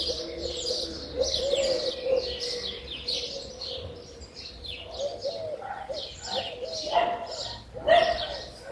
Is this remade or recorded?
recorded